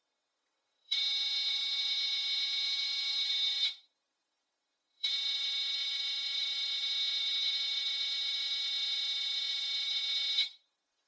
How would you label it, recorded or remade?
remade